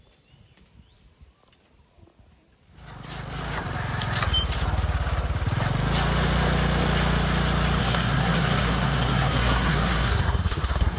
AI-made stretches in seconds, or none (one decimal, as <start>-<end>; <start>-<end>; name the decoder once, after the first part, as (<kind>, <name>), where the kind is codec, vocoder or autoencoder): 7.8-11.0 (codec, SNAC)